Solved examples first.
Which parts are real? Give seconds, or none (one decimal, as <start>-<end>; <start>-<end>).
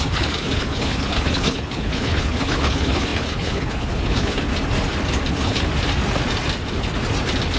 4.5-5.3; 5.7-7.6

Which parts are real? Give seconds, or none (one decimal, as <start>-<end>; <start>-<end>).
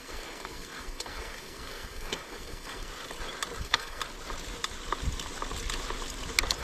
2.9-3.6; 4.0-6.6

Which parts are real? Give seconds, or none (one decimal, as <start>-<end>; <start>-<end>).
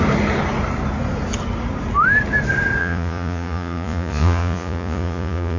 0.0-2.8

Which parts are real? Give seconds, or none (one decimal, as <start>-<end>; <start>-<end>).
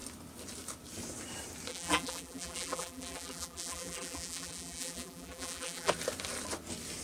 0.0-1.7; 5.9-7.0